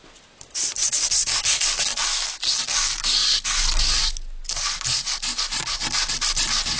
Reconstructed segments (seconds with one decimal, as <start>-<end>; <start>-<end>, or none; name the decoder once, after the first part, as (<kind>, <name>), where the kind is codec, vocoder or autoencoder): none